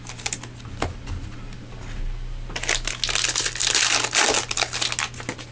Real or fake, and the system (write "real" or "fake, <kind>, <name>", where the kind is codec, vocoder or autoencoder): real